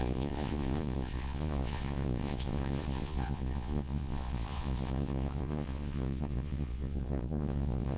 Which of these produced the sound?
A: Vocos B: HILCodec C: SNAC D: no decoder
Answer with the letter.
A